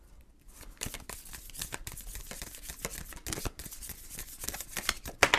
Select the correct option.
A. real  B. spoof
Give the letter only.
A